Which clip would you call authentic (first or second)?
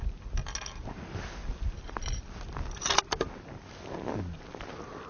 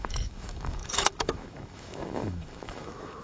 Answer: first